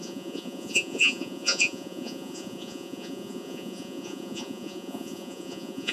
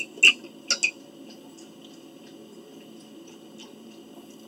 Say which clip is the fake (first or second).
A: first